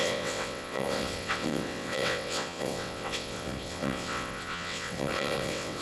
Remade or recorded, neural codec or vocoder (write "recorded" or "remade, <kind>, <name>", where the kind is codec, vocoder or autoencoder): remade, vocoder, WaveNeXt